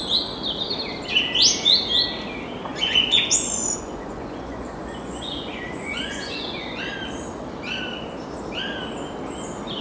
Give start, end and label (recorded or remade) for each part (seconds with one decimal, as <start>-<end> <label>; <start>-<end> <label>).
0.0-2.7 recorded; 2.7-6.8 remade; 6.8-9.8 recorded